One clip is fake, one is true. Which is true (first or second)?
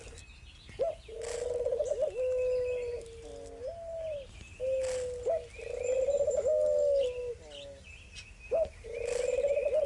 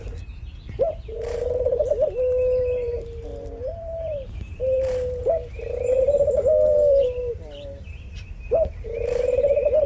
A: first